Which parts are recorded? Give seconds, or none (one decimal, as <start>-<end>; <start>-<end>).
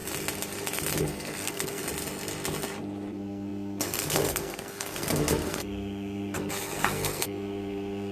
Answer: 0.0-1.0; 1.8-3.1